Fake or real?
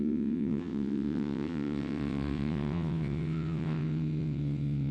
fake